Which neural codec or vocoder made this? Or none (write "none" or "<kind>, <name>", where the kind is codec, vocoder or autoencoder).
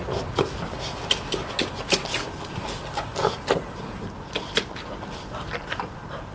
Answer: none